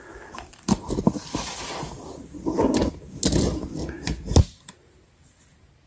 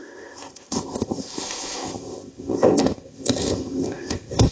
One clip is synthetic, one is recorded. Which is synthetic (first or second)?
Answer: second